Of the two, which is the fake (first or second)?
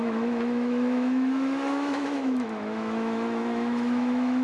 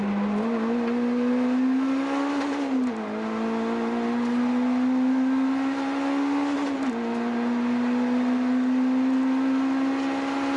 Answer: first